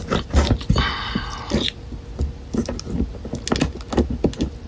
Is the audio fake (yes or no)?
no